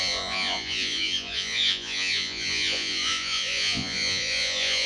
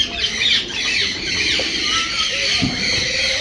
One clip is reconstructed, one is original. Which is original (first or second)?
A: second